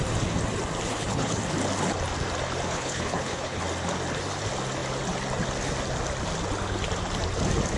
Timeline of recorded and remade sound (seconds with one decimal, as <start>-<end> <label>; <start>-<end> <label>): 0.0-0.9 recorded; 0.9-1.4 remade; 1.4-2.7 recorded; 2.7-3.6 remade; 3.6-7.8 recorded